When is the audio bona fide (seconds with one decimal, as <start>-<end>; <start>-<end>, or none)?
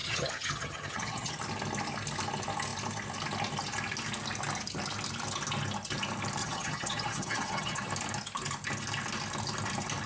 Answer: 1.3-6.4; 7.9-10.1